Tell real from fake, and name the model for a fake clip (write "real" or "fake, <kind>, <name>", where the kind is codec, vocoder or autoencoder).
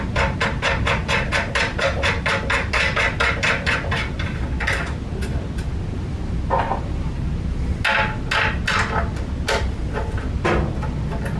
real